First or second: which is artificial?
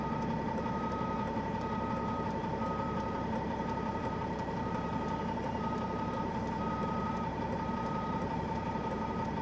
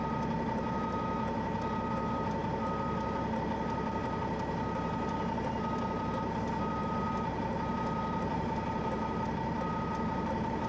first